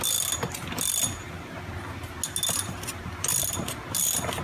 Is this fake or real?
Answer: real